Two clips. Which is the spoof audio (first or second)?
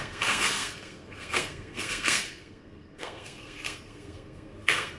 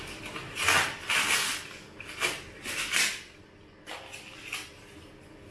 first